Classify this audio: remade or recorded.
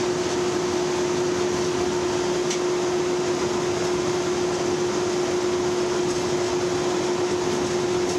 recorded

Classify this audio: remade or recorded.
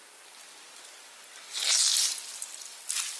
recorded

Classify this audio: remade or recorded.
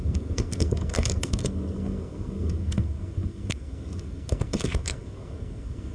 remade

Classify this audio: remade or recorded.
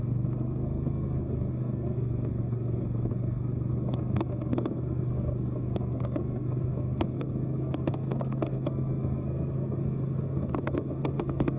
remade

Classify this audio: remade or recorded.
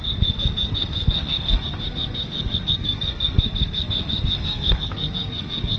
remade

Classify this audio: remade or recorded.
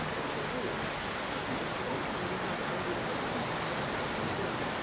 recorded